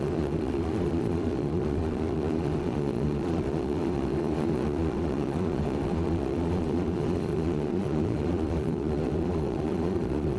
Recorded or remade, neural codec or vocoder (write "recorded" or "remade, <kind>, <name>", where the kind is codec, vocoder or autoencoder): remade, vocoder, Vocos